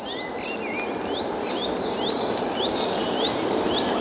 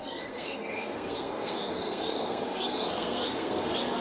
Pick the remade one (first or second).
second